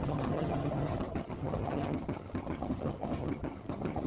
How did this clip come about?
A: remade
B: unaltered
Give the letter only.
A